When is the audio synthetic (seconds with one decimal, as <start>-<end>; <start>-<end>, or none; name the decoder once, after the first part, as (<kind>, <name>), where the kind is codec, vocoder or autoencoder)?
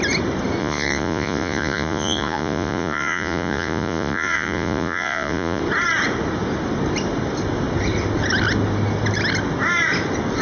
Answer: 0.6-5.6 (vocoder, Vocos)